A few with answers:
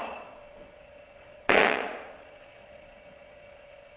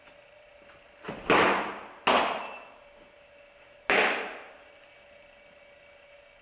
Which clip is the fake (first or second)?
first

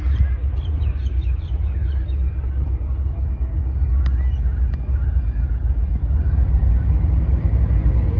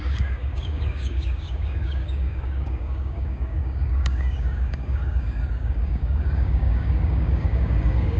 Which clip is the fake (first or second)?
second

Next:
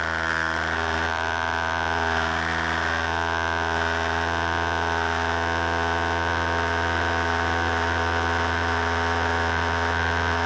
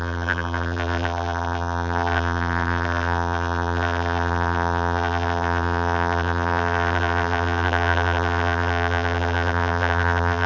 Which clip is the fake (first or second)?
second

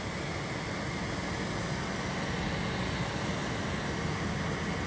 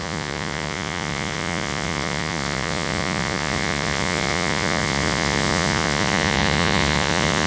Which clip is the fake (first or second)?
second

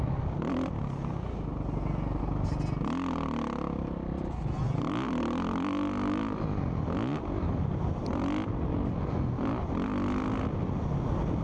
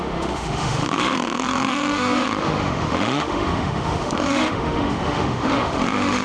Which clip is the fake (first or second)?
second